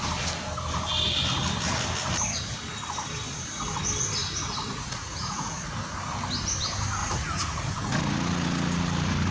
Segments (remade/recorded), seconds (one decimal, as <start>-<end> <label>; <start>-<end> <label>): 0.0-4.2 recorded; 4.2-6.0 remade; 6.0-7.0 recorded; 7.0-8.0 remade; 8.0-9.3 recorded